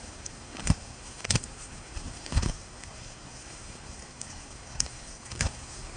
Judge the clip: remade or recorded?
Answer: remade